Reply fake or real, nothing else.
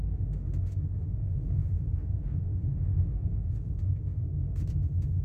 fake